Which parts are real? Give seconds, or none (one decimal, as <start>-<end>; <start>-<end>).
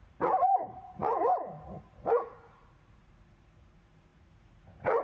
none